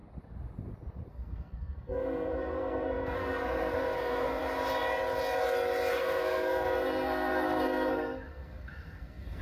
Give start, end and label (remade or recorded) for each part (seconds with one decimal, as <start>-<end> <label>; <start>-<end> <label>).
0.0-1.1 recorded; 1.1-4.4 remade; 4.4-5.9 recorded; 5.9-9.4 remade